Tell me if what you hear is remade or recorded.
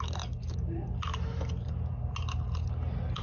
recorded